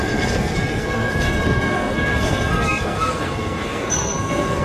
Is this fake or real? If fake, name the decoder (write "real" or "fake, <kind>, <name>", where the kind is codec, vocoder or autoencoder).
fake, codec, SNAC